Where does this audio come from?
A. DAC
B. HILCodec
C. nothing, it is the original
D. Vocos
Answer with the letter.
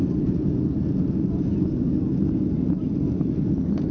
C